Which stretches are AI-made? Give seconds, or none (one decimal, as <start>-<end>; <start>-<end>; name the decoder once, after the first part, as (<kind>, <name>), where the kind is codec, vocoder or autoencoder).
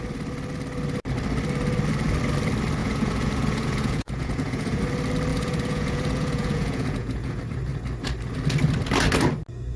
2.8-4.8 (vocoder, Vocos); 5.3-7.4